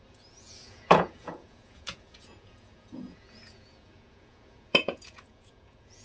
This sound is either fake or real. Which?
fake